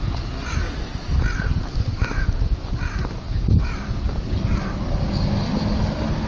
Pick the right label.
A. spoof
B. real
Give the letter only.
B